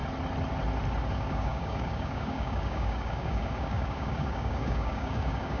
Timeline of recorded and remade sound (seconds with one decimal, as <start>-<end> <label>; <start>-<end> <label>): 0.0-1.1 recorded; 1.1-5.6 remade